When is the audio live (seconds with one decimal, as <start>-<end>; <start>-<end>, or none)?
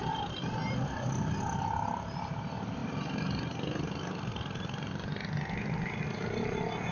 0.0-6.9